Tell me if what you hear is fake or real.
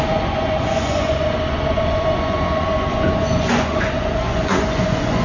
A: fake